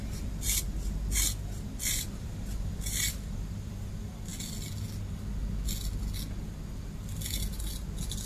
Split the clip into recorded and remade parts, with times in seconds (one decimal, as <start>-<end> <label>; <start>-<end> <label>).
0.0-4.3 remade; 4.3-6.9 recorded; 6.9-8.3 remade